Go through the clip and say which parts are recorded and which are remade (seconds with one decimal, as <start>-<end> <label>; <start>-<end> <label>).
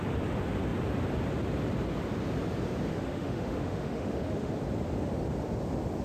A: 0.0-2.9 recorded; 2.9-4.5 remade; 4.5-6.0 recorded